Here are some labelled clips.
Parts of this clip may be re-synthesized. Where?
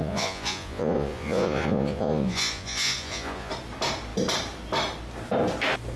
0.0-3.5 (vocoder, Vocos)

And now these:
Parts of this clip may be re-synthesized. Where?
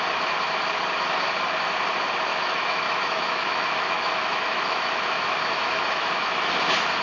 2.3-6.5 (autoencoder, DAC-VAE)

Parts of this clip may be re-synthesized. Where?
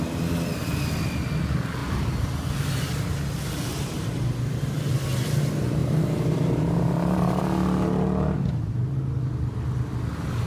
1.8-3.0 (vocoder, BigVGAN v2); 3.7-4.2; 5.8-7.4